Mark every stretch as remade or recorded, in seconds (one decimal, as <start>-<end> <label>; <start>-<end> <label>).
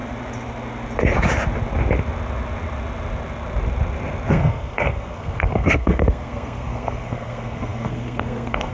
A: 0.0-4.3 recorded; 4.3-8.7 remade